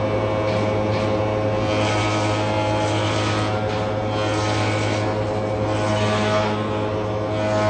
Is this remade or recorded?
recorded